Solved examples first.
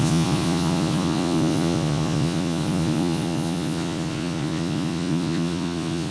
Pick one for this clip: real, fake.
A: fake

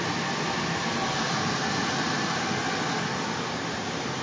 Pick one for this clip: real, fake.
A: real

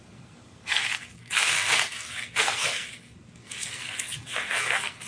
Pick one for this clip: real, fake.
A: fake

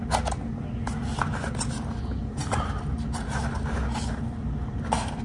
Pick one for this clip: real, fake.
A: real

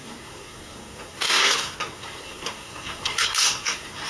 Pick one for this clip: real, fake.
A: fake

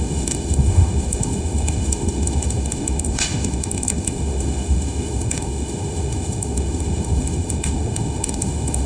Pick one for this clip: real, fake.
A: fake